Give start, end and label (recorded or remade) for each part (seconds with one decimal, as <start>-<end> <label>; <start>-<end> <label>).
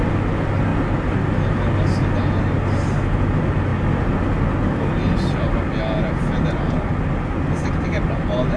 0.0-8.6 recorded